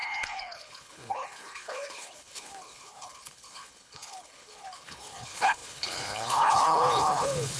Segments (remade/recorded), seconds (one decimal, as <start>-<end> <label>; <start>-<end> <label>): 0.0-7.6 remade